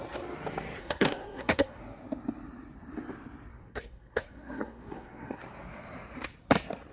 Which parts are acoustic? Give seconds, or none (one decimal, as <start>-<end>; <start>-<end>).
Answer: 0.0-0.8; 1.8-3.5; 5.4-6.9